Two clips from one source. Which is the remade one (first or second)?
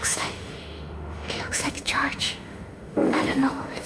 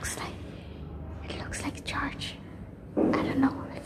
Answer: first